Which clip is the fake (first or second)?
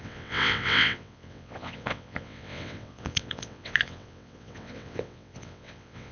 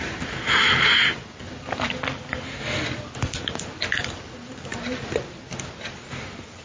first